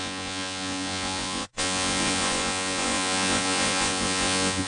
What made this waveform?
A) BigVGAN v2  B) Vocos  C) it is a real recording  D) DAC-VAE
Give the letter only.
B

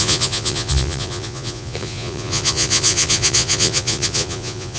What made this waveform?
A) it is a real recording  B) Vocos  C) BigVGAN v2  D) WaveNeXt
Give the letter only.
B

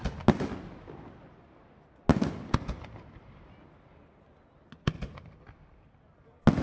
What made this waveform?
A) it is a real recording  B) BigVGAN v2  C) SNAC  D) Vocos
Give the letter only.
A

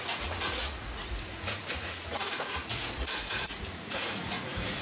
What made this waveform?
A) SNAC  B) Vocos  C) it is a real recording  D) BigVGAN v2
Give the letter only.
B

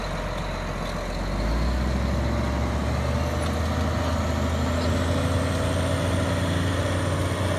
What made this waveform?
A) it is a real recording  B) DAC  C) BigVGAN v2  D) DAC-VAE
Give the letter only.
A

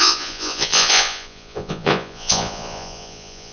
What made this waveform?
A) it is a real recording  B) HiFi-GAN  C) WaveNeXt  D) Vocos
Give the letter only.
D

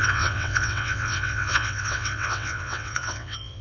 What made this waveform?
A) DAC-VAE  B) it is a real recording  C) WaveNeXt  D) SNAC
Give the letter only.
C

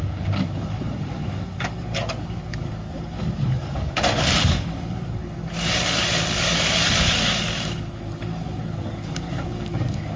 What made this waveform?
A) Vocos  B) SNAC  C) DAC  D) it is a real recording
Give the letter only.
C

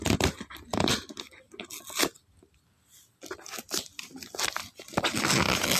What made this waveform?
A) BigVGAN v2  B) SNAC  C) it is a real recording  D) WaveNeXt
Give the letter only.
C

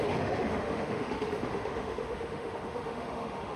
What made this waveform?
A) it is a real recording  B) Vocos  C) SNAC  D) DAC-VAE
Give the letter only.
D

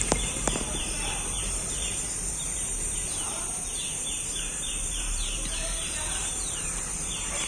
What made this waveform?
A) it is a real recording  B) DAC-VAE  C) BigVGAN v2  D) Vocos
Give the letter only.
C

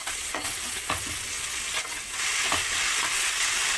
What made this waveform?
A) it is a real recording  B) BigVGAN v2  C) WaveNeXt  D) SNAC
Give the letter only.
C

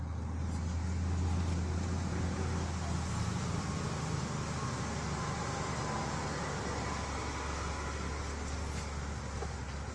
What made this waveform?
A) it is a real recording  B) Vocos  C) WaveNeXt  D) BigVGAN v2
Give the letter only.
A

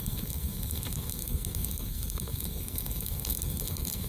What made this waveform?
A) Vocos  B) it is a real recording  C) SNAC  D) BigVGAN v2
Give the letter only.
C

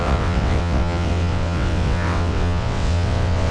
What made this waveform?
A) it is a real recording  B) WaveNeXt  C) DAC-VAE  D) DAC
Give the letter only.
B